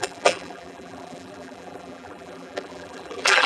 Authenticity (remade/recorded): remade